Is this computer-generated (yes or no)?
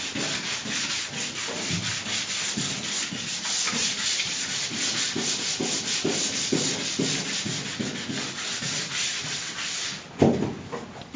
no